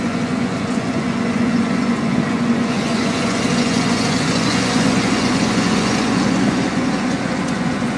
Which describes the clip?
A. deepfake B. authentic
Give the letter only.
A